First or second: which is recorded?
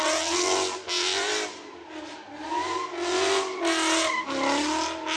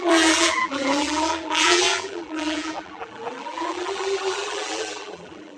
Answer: first